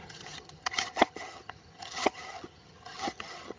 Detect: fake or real fake